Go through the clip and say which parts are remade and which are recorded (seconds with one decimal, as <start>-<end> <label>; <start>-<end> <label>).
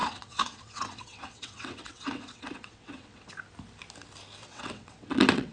0.0-3.3 remade; 3.3-4.4 recorded; 4.4-5.5 remade